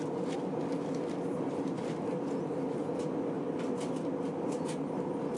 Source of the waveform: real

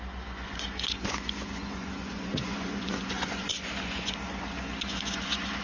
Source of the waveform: fake